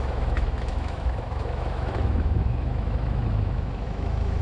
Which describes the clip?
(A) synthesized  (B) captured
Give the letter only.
A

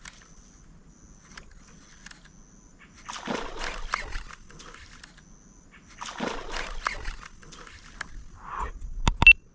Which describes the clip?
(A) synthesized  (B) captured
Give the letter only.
B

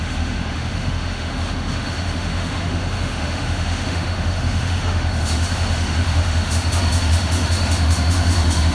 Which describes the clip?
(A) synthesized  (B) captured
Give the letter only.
A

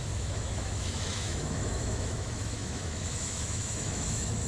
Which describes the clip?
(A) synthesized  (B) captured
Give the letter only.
A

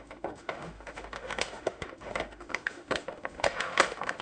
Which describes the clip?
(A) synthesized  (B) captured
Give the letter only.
A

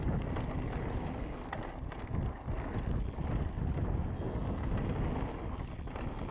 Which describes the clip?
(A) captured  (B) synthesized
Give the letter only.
A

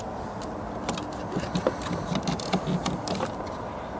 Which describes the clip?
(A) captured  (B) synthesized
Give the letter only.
A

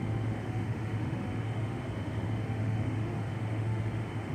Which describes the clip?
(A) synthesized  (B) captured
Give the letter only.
A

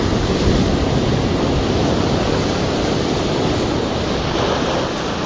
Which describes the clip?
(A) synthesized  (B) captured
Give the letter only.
B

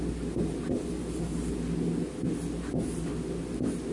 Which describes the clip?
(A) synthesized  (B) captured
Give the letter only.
B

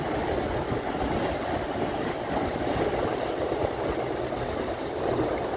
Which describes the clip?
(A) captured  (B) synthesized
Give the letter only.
A